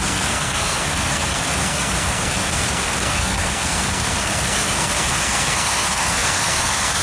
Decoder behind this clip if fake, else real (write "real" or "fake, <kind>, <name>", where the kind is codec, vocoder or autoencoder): fake, codec, SNAC